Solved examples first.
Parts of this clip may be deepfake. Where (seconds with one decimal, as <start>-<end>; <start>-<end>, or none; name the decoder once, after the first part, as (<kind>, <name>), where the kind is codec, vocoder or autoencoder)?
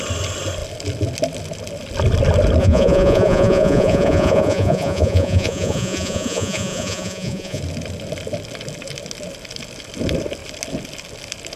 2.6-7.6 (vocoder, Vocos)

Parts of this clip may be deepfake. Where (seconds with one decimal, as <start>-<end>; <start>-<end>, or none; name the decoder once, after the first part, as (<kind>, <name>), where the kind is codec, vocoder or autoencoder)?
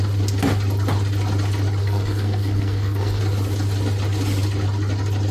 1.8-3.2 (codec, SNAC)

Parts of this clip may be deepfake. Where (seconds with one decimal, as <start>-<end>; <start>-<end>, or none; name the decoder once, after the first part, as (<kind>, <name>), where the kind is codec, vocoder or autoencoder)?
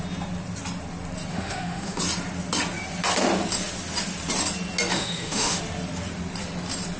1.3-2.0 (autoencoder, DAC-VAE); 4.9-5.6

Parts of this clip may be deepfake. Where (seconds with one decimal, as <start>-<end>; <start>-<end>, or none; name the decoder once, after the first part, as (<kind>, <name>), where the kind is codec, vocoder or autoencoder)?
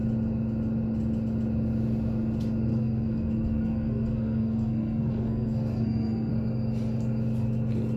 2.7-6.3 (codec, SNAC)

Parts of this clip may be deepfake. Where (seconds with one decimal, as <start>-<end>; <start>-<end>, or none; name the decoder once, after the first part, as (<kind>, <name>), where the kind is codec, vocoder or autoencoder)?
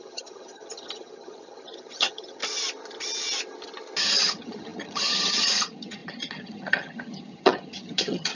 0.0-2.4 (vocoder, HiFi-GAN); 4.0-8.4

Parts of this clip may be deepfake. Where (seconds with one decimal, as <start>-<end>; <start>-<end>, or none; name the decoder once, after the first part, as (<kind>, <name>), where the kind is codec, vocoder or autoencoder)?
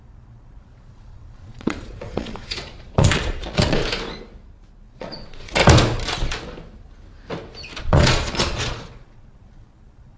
0.0-3.8 (vocoder, Vocos); 4.8-5.6; 7.8-10.2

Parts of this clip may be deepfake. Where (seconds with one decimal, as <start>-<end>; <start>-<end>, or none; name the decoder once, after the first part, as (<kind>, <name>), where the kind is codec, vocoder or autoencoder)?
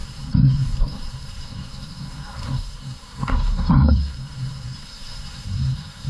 0.0-6.1 (codec, SNAC)